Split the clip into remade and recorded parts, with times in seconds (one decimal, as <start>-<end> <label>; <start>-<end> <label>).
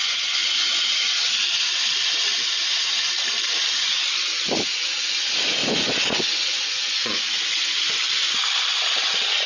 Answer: 0.0-1.1 remade; 1.1-5.6 recorded; 5.6-7.3 remade; 7.3-9.5 recorded